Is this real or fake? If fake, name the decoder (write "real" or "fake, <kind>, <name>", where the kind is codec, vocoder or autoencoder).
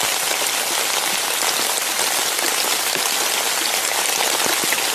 real